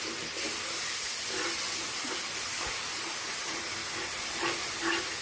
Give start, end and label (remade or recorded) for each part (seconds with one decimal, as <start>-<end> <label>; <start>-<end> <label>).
0.0-2.5 recorded; 2.5-3.0 remade; 3.0-5.2 recorded

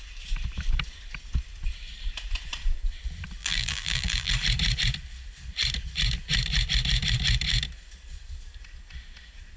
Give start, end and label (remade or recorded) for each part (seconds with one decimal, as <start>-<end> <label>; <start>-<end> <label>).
0.0-3.4 recorded; 3.4-4.3 remade; 4.3-9.6 recorded